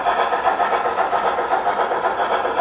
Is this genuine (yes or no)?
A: yes